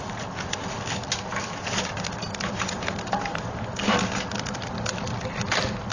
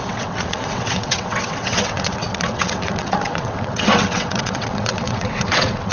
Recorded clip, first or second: first